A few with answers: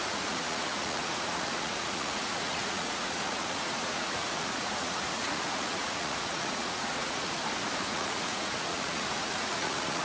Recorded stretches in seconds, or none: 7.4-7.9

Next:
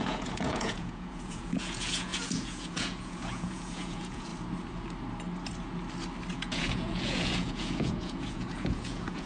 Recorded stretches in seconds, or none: 4.3-6.3

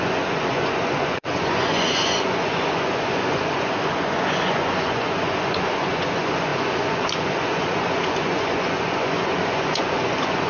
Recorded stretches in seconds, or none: none

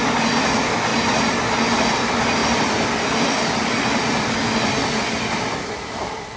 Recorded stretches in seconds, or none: 0.0-6.4